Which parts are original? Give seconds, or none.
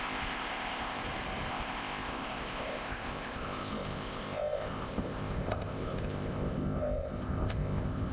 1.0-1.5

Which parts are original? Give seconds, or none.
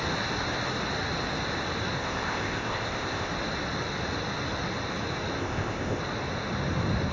0.0-2.0; 3.3-5.4; 6.0-7.1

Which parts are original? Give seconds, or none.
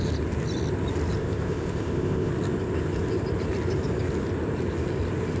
0.0-1.2; 2.3-5.4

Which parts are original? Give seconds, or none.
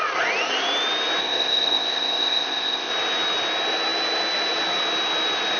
0.0-1.2; 2.9-5.6